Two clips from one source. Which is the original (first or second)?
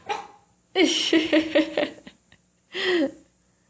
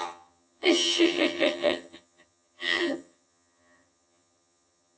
first